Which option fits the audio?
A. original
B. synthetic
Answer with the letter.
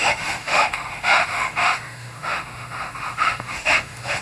B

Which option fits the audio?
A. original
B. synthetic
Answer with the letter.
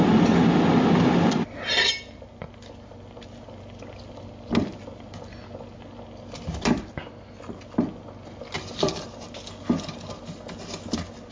A